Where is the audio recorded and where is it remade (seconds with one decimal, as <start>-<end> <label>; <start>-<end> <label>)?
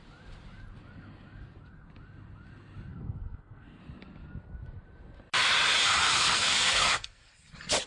0.0-2.9 recorded; 2.9-3.8 remade; 3.8-6.0 recorded; 6.0-7.3 remade; 7.3-7.9 recorded